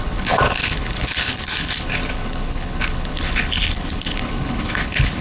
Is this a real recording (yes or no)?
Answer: no